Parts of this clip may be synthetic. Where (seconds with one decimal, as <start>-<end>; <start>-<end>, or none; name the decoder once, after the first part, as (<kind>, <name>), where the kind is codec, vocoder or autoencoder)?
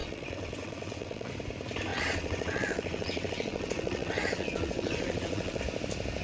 0.0-1.3 (vocoder, WaveNeXt); 1.9-5.6